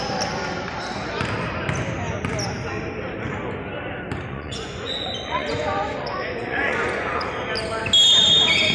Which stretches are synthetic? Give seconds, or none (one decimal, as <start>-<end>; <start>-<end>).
4.3-7.3